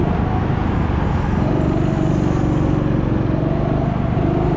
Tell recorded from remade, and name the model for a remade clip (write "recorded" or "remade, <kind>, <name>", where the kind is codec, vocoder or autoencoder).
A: recorded